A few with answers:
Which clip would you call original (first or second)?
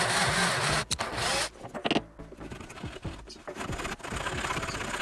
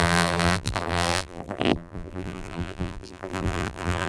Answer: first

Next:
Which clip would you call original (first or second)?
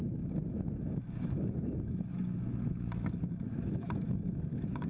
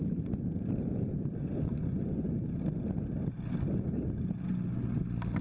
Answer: second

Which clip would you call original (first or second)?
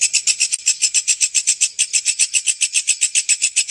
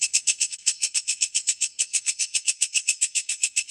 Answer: first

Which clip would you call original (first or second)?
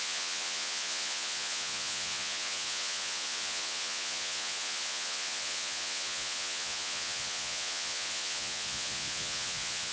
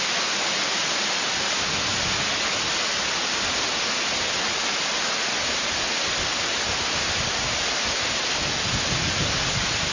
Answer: second